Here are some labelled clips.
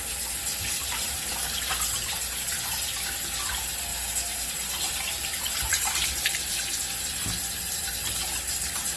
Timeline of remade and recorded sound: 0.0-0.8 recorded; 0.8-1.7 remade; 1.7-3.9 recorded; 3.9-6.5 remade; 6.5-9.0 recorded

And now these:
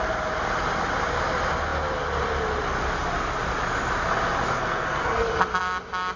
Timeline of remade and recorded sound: 0.0-4.5 recorded; 4.5-5.3 remade; 5.3-6.2 recorded

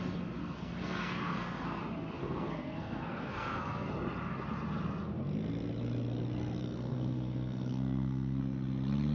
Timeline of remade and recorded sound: 0.0-0.4 recorded; 0.4-1.8 remade; 1.8-2.2 recorded; 2.2-3.9 remade; 3.9-6.6 recorded; 6.6-8.4 remade; 8.4-9.1 recorded

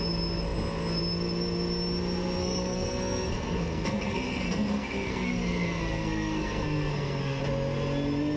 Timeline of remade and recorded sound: 0.0-2.4 recorded; 2.4-7.4 remade; 7.4-8.4 recorded

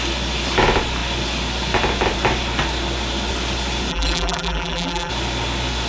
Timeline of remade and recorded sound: 0.0-3.9 recorded; 3.9-5.1 remade; 5.1-5.9 recorded

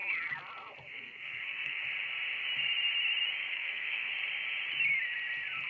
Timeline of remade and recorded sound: 0.0-0.8 recorded; 0.8-1.8 remade; 1.8-3.5 recorded; 3.5-4.1 remade; 4.1-5.7 recorded